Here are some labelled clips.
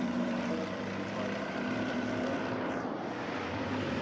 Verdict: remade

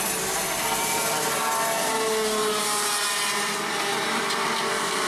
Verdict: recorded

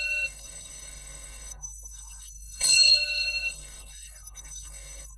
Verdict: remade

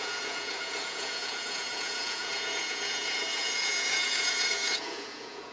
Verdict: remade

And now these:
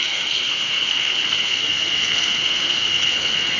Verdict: remade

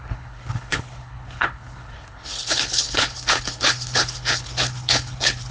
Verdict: remade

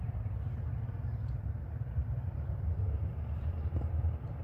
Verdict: remade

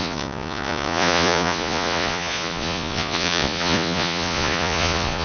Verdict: remade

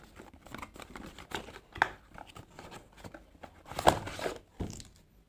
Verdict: recorded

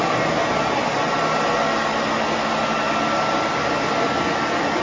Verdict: recorded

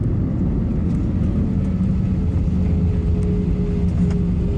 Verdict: recorded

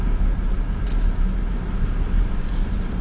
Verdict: recorded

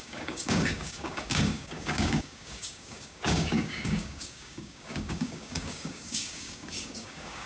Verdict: remade